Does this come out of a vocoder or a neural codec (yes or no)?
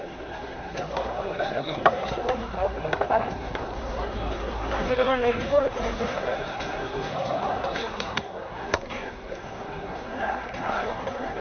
yes